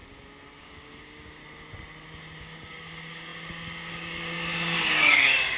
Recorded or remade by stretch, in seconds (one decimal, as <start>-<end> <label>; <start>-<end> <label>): 0.0-0.6 recorded; 0.6-1.4 remade; 1.4-2.4 recorded; 2.4-5.6 remade